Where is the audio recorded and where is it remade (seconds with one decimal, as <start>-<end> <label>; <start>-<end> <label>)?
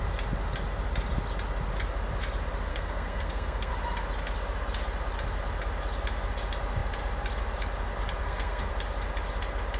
0.0-2.7 recorded; 2.7-3.7 remade; 3.7-8.2 recorded; 8.2-8.7 remade; 8.7-9.8 recorded